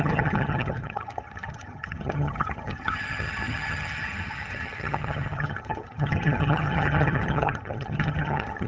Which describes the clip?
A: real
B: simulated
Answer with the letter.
B